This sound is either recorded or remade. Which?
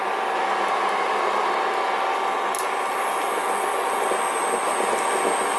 recorded